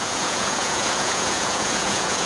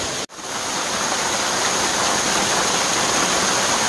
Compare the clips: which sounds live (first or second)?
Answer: second